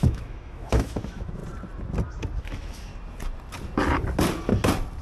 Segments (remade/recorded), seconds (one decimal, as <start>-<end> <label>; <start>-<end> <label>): 0.0-1.4 remade; 1.4-2.4 recorded; 2.4-2.9 remade; 2.9-5.0 recorded

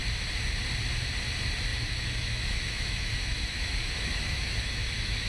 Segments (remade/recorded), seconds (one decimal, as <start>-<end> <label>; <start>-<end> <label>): 0.0-1.7 recorded; 1.7-5.3 remade